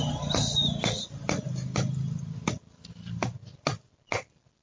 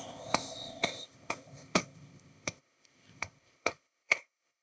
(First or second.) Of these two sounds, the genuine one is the first